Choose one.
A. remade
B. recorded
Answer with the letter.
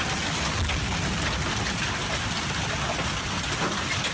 B